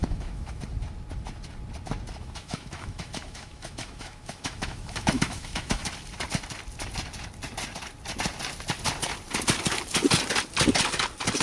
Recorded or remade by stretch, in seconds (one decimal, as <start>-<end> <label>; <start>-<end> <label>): 0.0-0.6 remade; 0.6-2.2 recorded; 2.2-5.9 remade; 5.9-11.4 recorded